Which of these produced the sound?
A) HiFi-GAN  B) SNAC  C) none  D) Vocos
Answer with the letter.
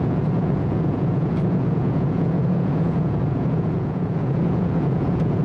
D